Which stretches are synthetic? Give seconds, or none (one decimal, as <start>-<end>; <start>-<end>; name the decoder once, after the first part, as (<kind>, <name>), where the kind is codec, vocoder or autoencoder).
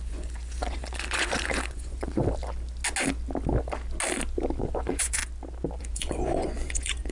0.0-2.2 (vocoder, Vocos); 4.6-5.2; 5.8-7.1